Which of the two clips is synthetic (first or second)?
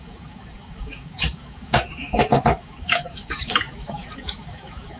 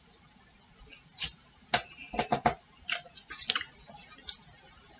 first